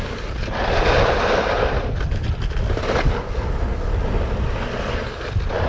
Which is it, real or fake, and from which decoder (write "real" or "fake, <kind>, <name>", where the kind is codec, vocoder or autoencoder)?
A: real